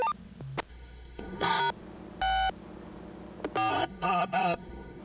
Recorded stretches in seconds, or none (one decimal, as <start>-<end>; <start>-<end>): 0.0-0.7; 1.6-3.7